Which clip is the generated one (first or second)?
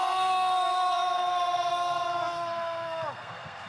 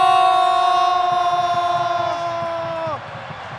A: first